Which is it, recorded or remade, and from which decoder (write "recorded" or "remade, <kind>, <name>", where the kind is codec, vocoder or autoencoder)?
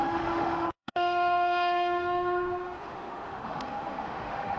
remade, autoencoder, DAC-VAE